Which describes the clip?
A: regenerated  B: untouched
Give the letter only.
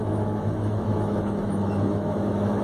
A